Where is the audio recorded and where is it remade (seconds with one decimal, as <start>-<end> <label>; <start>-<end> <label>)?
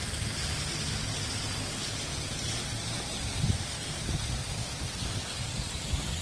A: 0.0-2.1 recorded; 2.1-2.6 remade; 2.6-6.2 recorded